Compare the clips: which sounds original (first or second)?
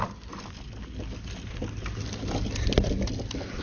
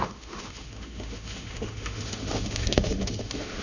first